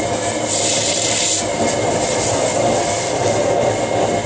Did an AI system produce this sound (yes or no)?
no